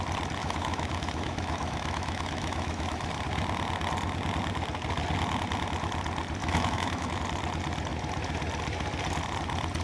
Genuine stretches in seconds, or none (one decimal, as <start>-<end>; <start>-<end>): 0.0-0.4; 3.1-6.4; 7.2-9.8